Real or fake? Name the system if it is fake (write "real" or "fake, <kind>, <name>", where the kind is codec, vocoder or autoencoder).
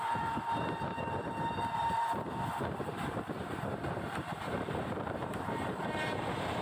fake, vocoder, BigVGAN v2